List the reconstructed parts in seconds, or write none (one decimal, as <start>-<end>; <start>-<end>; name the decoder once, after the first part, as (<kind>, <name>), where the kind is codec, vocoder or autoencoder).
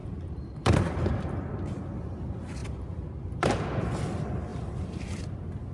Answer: 0.0-1.5 (vocoder, BigVGAN v2); 2.6-3.5; 4.5-5.2